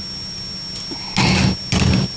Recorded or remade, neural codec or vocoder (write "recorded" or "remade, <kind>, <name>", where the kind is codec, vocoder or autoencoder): recorded